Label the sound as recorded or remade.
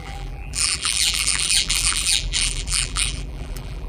remade